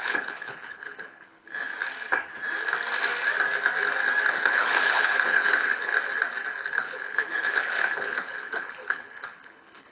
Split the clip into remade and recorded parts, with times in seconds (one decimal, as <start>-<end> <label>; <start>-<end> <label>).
0.0-1.7 remade; 1.7-4.3 recorded; 4.3-5.9 remade; 5.9-6.7 recorded; 6.7-9.9 remade